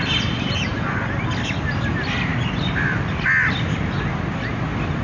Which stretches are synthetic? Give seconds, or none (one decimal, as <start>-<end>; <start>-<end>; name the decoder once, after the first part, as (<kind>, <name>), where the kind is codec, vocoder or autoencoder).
none